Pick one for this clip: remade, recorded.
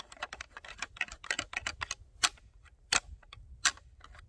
recorded